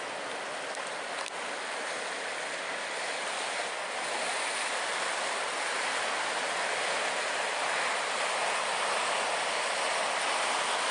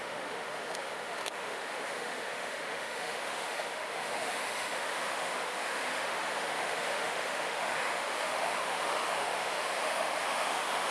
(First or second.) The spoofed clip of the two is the second